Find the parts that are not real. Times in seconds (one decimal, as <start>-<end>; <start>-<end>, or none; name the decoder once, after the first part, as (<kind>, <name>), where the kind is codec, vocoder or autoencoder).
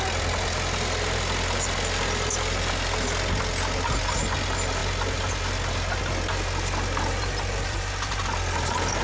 7.2-8.2 (vocoder, BigVGAN v2)